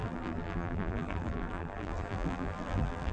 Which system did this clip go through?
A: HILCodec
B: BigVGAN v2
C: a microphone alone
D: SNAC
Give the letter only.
B